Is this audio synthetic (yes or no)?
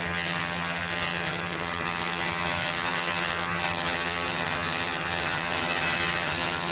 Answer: yes